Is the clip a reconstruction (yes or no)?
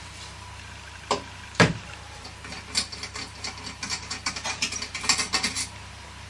yes